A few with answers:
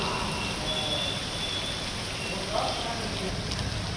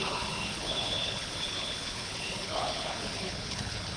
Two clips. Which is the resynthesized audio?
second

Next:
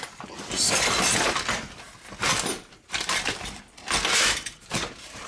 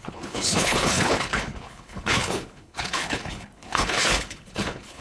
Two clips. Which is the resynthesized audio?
second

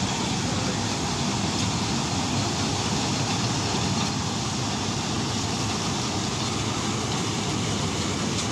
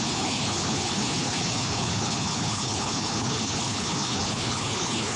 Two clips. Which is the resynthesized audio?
second